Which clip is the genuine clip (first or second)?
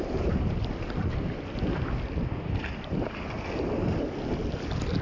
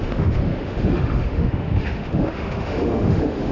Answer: first